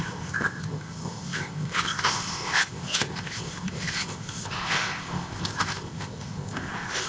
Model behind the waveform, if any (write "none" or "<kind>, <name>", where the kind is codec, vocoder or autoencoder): codec, ZipCodec